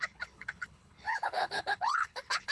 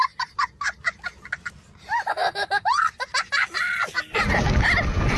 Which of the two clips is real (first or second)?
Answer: second